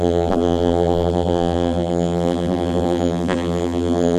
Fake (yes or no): yes